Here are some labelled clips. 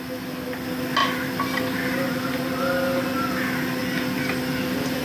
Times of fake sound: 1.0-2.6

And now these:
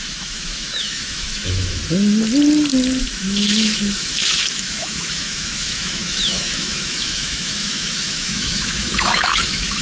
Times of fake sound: 0.0-1.8; 3.0-9.8